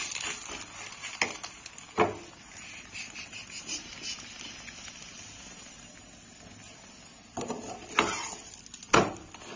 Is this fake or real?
real